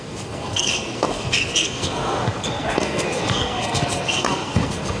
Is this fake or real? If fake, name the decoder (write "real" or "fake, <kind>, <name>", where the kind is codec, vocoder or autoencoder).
fake, codec, SNAC